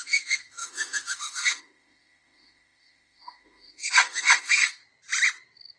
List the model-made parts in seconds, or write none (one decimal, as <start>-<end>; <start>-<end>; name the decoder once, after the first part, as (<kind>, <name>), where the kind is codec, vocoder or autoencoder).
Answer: 0.0-4.8 (autoencoder, DAC-VAE)